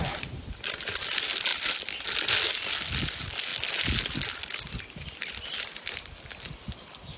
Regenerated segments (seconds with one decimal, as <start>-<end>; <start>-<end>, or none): none